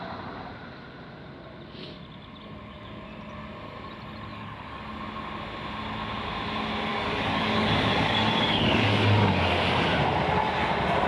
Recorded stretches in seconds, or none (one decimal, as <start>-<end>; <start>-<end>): 0.0-4.3; 4.8-6.9; 9.5-11.1